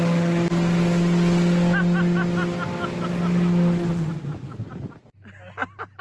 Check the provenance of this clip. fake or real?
real